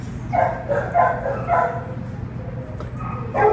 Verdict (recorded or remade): recorded